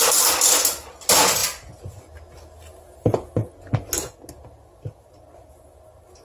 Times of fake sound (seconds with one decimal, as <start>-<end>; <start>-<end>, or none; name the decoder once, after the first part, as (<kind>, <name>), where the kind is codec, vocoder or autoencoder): none